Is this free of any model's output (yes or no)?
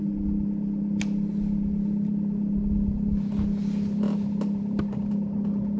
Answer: yes